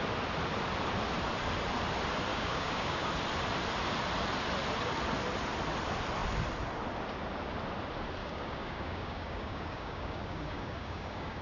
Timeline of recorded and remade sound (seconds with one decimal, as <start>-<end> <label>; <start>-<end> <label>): 0.0-2.3 recorded; 2.3-3.1 remade; 3.1-8.2 recorded; 8.2-11.4 remade